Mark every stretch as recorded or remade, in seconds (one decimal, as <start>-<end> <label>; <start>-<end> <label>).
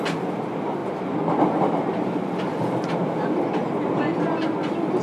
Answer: 0.0-5.0 recorded